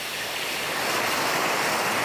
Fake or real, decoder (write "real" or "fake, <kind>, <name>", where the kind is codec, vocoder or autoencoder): real